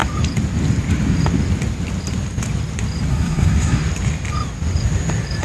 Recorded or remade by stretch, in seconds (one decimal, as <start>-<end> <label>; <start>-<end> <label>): 0.0-3.1 recorded; 3.1-3.8 remade; 3.8-5.4 recorded